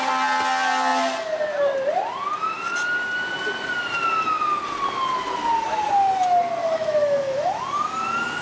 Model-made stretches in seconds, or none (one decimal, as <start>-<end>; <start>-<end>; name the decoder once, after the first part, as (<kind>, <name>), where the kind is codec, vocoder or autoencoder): 6.6-7.5 (autoencoder, DAC-VAE)